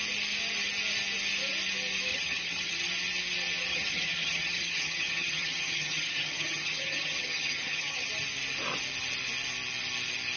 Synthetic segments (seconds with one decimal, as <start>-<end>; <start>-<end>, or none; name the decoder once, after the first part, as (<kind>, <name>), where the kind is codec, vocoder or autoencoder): 2.1-2.9 (vocoder, HiFi-GAN); 3.7-8.1